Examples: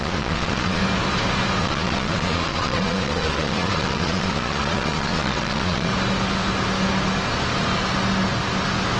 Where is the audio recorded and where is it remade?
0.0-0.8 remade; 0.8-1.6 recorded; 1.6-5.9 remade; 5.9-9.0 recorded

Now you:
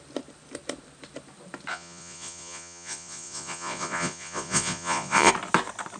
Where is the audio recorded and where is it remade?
0.0-1.7 recorded; 1.7-5.3 remade; 5.3-6.0 recorded

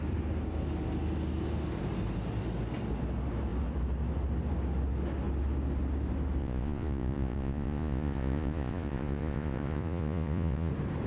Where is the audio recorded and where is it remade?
0.0-6.4 recorded; 6.4-10.7 remade; 10.7-11.1 recorded

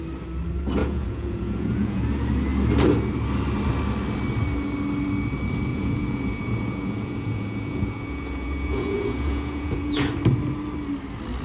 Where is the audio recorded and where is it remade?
0.0-0.8 recorded; 0.8-2.0 remade; 2.0-5.7 recorded; 5.7-10.1 remade; 10.1-11.4 recorded